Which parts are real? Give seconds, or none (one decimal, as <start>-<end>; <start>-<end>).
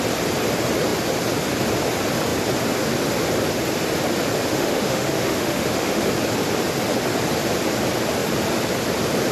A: 0.0-4.5; 6.1-9.3